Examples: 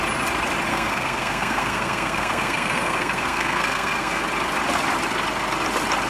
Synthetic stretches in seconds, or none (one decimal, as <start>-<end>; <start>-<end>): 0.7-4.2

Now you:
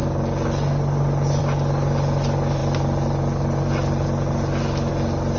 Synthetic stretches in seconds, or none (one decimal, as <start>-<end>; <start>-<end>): none

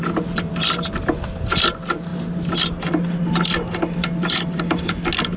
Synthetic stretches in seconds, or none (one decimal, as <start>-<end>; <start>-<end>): none

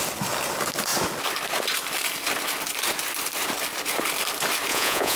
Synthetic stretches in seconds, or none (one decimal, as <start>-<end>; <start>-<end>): 4.7-5.2

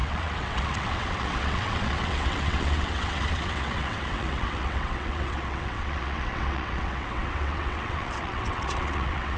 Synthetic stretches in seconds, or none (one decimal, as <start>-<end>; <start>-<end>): 0.0-9.4